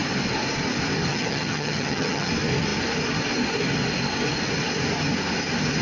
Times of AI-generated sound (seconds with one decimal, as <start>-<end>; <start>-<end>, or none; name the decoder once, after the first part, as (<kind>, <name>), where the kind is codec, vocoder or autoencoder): 1.1-2.3 (vocoder, HiFi-GAN)